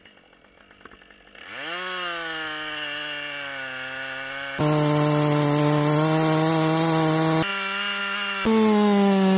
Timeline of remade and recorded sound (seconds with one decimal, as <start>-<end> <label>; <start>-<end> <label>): 0.0-9.4 recorded